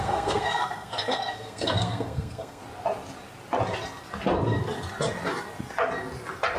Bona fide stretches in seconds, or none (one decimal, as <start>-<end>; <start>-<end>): 2.6-6.6